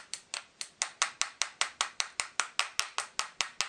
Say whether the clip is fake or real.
real